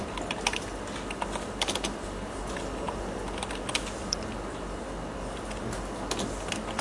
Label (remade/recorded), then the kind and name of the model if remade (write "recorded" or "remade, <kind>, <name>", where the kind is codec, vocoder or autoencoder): recorded